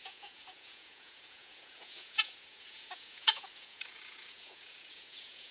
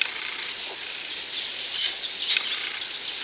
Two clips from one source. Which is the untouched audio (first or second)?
second